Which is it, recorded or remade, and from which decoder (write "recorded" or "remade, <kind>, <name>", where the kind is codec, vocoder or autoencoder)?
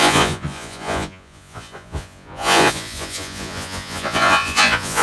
remade, vocoder, Vocos